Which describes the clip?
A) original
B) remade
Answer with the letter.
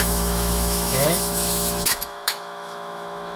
B